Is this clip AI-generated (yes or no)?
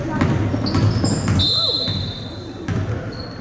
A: no